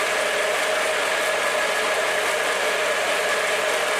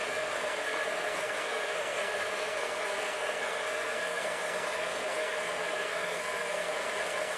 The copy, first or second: second